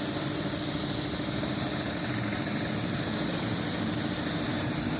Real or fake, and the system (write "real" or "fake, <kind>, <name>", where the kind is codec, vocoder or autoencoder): real